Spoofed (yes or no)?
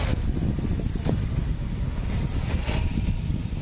no